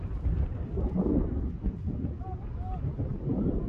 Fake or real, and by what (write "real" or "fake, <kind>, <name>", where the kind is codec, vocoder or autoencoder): real